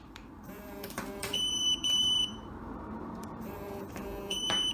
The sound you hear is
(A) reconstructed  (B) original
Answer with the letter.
A